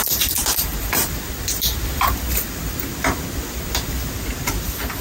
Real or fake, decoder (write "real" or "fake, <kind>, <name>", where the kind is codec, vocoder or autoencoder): fake, vocoder, BigVGAN v2